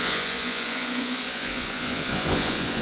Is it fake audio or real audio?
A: fake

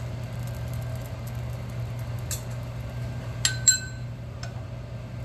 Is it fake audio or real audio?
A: real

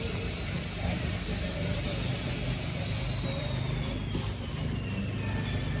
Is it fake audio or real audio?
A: real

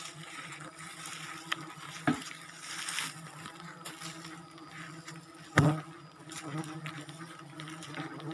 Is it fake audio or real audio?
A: real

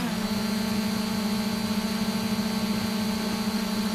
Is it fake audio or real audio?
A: real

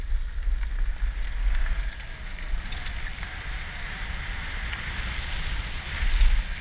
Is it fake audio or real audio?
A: real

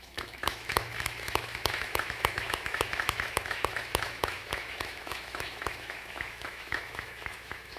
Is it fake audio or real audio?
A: fake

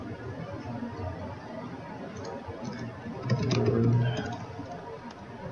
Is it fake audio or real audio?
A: real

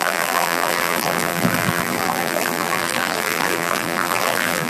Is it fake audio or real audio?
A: fake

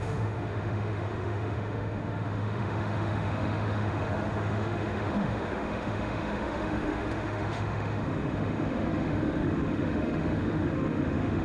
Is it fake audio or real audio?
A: fake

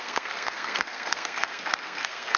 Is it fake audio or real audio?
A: fake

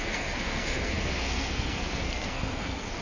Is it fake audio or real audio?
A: fake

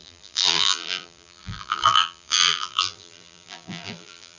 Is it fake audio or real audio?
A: fake